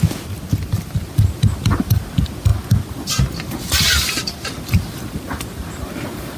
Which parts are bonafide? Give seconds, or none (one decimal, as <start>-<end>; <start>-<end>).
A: 0.0-6.4